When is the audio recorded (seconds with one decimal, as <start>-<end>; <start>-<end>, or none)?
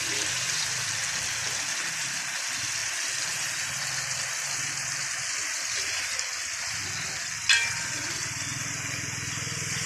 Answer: 0.0-9.9